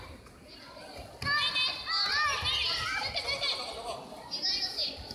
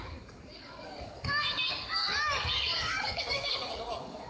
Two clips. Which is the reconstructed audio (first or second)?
second